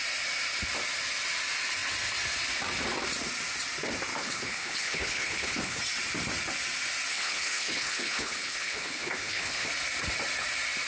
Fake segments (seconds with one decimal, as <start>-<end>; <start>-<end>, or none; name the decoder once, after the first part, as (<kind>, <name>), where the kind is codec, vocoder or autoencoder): 4.2-5.8 (codec, HILCodec); 7.1-9.7